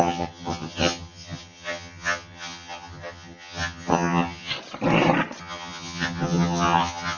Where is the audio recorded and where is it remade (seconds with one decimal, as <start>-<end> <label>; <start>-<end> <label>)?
0.0-4.5 remade; 4.5-5.4 recorded; 5.4-7.2 remade